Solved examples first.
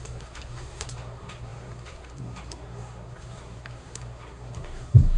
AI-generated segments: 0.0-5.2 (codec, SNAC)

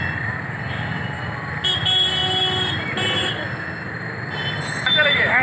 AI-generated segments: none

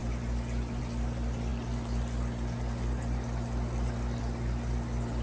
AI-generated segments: none

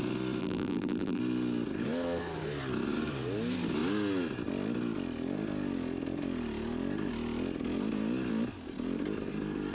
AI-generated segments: 0.4-1.2 (vocoder, BigVGAN v2)

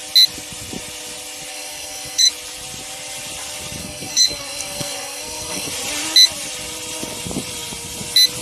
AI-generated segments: 1.5-2.3 (codec, SNAC); 3.8-5.7

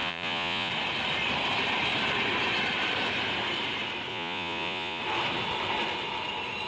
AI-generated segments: 0.0-0.7 (vocoder, Vocos); 4.1-5.0